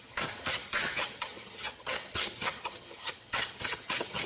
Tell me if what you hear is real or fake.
fake